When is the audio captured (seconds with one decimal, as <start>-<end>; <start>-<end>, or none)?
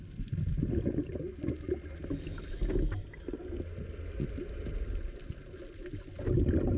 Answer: 0.0-6.8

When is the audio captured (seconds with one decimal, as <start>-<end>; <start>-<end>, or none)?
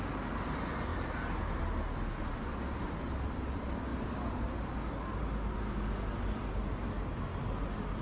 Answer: 0.0-8.0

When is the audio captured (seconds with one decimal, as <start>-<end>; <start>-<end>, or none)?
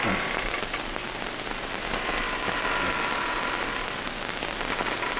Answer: 0.0-5.2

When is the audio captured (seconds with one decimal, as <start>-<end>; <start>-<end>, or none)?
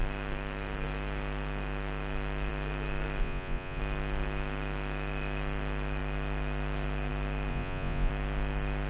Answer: 0.0-3.2; 3.8-7.5; 8.1-8.9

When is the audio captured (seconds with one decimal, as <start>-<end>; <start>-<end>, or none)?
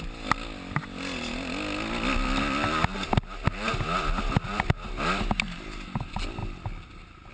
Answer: 0.0-7.3